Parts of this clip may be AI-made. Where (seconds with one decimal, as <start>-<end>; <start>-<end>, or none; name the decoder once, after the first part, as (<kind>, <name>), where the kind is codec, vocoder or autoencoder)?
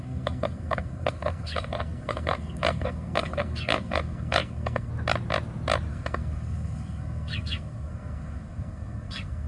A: 0.0-4.9 (codec, SNAC); 5.9-9.5